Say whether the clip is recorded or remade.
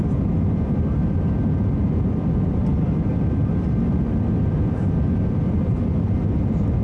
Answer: recorded